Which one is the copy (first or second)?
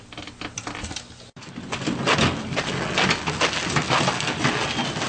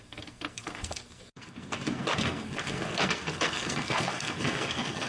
second